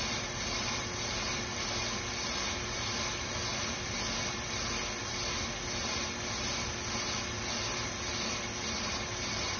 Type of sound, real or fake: real